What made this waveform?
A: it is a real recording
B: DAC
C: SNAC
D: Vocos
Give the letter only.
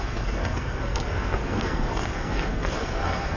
C